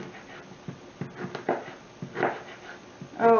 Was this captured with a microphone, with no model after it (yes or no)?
yes